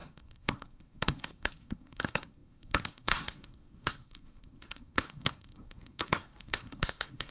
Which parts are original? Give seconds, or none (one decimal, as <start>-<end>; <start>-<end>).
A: none